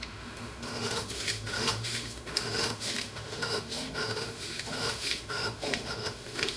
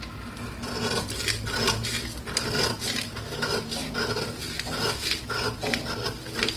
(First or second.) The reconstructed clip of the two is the first